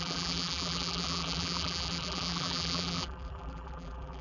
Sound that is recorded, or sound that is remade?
remade